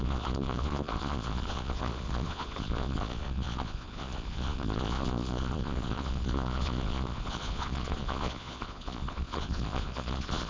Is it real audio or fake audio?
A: fake